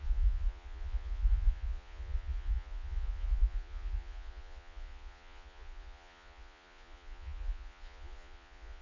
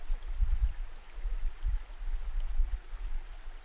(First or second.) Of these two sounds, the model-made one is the first